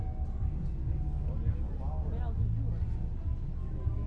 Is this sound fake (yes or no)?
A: no